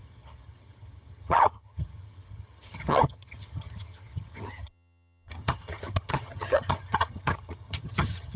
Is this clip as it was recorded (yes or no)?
no